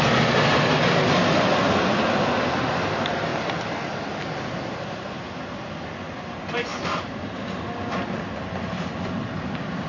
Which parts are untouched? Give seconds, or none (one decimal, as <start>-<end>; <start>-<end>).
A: 0.0-9.9